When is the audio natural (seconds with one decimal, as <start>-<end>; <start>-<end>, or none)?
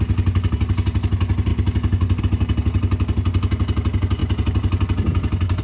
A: 0.0-5.6